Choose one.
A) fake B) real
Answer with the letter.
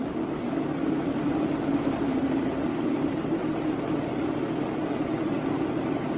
A